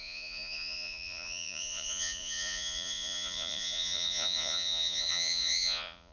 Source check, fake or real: fake